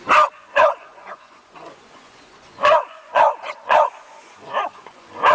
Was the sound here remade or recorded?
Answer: remade